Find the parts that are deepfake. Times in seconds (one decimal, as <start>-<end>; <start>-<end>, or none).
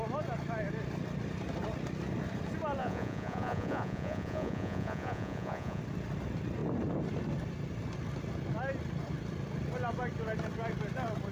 2.8-5.8